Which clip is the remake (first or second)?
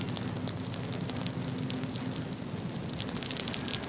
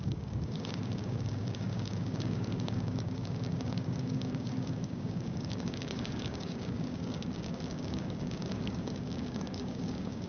second